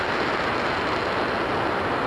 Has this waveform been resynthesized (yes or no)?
no